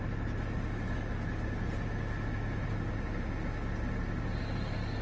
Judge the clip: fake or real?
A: real